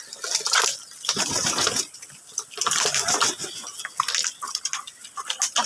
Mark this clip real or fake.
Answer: real